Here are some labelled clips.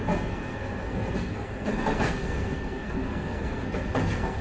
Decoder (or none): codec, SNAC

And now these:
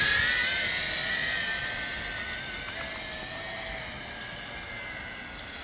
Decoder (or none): none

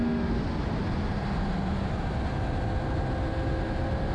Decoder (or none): none